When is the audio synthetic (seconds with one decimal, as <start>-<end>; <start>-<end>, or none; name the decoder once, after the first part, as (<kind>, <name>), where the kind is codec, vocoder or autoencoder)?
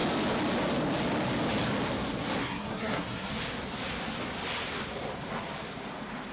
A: 2.4-3.3 (codec, SNAC)